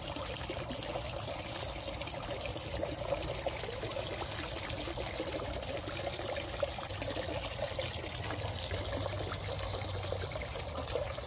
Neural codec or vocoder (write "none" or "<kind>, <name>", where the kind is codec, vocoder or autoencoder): none